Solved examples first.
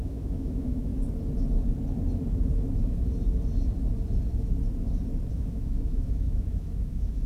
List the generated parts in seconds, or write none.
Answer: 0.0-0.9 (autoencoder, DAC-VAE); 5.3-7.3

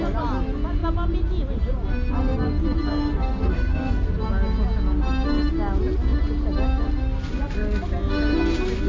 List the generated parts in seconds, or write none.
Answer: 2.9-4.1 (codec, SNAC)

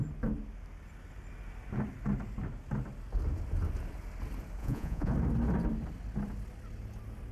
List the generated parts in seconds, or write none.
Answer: 4.6-5.1 (vocoder, Vocos)